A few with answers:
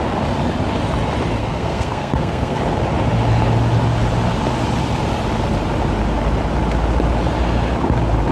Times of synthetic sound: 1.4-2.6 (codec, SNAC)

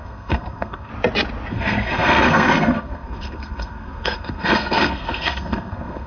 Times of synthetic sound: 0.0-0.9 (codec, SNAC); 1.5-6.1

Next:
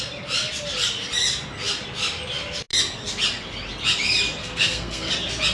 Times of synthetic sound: 4.4-5.1 (codec, SNAC)